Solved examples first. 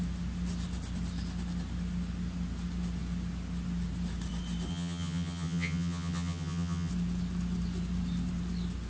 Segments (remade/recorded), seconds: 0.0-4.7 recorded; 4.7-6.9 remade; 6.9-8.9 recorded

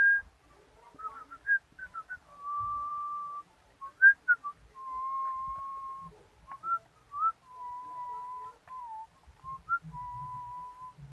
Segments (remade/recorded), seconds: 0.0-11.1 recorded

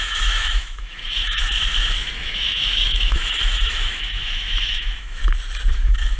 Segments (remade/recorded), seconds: 0.0-5.2 remade; 5.2-5.7 recorded; 5.7-6.2 remade